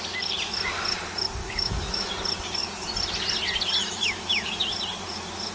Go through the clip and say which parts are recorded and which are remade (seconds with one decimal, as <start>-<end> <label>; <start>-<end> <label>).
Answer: 0.0-1.4 recorded; 1.4-2.1 remade; 2.1-3.8 recorded; 3.8-4.6 remade; 4.6-5.5 recorded